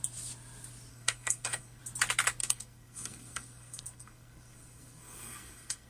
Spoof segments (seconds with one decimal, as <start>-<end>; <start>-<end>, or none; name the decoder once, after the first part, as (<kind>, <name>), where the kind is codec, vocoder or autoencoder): 0.9-1.8 (codec, SNAC); 2.4-5.9